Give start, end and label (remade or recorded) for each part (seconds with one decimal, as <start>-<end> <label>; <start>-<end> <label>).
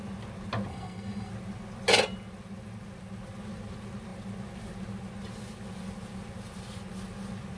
0.0-0.7 recorded; 0.7-1.3 remade; 1.3-7.6 recorded